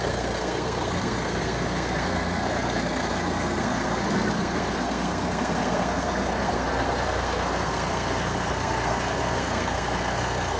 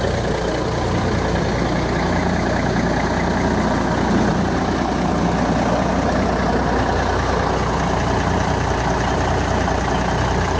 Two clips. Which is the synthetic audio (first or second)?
first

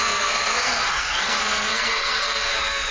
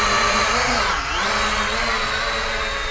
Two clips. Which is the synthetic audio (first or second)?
first